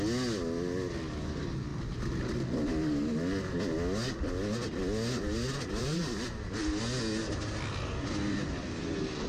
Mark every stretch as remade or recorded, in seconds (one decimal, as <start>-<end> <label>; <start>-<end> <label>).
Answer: 0.0-5.8 recorded; 5.8-6.8 remade; 6.8-9.3 recorded

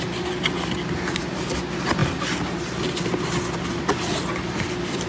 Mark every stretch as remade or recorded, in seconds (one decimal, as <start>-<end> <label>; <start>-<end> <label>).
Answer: 0.0-5.1 recorded

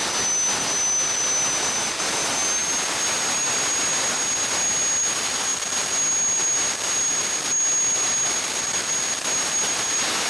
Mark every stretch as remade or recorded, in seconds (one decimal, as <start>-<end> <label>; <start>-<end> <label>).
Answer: 0.0-10.3 recorded

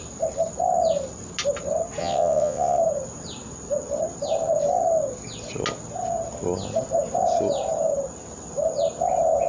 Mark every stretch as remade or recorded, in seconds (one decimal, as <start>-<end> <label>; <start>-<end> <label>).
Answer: 0.0-2.0 recorded; 2.0-2.8 remade; 2.8-9.5 recorded

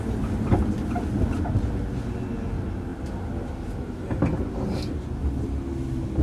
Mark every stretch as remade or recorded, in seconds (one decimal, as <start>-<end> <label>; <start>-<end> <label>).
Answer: 0.0-6.2 recorded

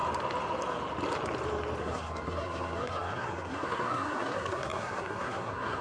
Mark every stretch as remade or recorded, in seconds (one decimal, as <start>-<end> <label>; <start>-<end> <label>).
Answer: 0.0-1.8 recorded; 1.8-5.8 remade